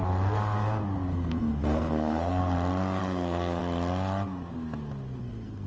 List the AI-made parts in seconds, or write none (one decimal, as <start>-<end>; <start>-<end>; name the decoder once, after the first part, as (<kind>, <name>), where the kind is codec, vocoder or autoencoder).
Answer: 1.1-2.4 (codec, SNAC); 3.0-3.6; 5.2-5.7